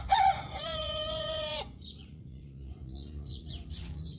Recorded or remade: remade